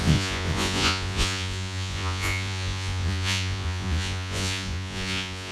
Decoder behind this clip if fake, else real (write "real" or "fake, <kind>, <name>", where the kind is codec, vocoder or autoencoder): fake, vocoder, Vocos